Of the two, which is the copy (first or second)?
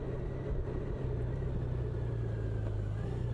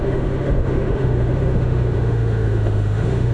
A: second